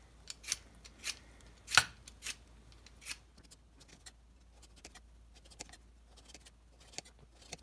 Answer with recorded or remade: recorded